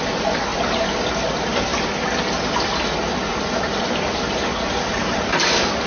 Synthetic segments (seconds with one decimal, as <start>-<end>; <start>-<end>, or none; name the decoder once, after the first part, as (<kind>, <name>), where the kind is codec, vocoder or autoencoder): none